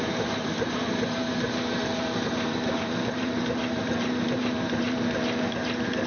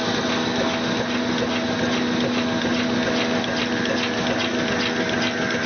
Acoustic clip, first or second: second